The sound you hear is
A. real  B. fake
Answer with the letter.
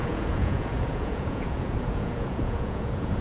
B